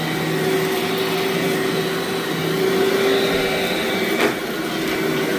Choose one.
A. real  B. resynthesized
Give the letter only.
A